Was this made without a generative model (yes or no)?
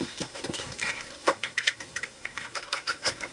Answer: no